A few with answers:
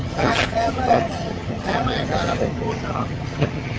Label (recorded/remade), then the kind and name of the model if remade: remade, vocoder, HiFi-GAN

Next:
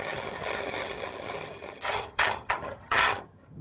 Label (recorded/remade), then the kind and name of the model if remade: remade, vocoder, HiFi-GAN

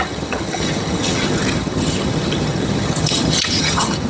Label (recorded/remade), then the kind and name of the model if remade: remade, vocoder, HiFi-GAN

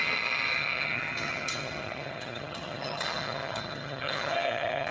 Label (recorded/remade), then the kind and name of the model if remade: remade, vocoder, HiFi-GAN